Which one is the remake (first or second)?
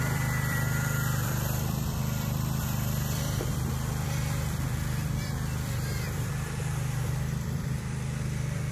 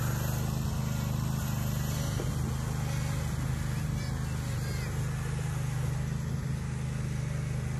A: first